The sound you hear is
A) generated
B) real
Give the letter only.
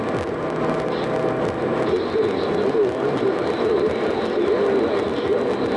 B